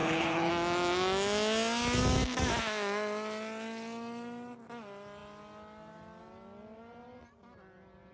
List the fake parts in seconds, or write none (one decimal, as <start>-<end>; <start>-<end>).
0.0-0.5